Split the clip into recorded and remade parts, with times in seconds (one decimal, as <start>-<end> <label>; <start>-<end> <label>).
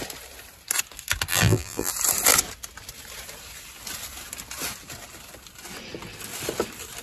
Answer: 0.0-1.3 recorded; 1.3-1.9 remade; 1.9-7.0 recorded